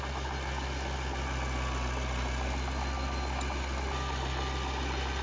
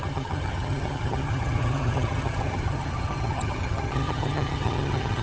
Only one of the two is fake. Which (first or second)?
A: second